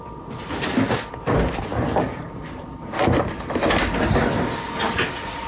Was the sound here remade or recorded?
recorded